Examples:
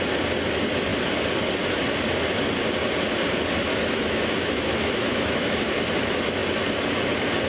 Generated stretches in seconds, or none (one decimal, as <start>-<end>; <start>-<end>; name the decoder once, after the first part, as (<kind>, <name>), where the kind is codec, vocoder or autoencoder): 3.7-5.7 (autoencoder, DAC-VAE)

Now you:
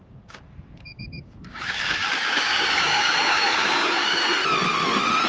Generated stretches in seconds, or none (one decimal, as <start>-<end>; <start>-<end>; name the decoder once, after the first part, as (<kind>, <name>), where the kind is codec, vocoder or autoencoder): 0.0-4.2 (codec, DAC)

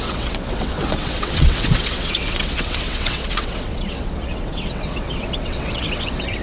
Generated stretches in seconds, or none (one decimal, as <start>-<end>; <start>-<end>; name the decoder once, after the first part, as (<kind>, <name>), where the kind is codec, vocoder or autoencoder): 0.0-6.4 (vocoder, WaveNeXt)

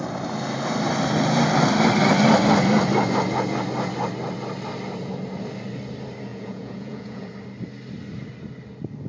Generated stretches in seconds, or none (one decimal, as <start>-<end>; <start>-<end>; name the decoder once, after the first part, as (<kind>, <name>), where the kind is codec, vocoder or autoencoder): 6.3-7.3 (vocoder, Vocos)